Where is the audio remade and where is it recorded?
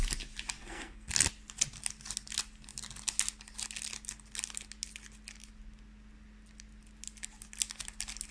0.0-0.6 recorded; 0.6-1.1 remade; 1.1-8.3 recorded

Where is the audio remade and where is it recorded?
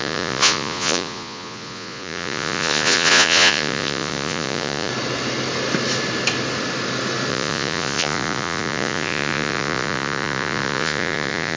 0.0-4.9 remade; 4.9-7.3 recorded; 7.3-11.6 remade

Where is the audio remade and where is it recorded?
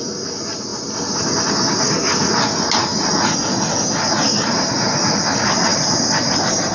0.0-5.7 recorded; 5.7-6.7 remade